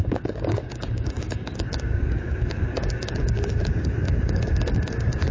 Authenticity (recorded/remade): remade